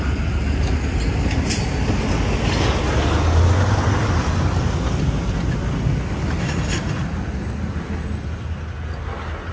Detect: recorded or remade recorded